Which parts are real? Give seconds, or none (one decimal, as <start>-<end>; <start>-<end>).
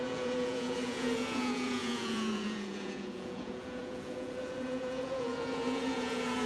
none